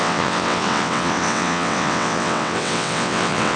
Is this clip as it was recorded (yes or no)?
no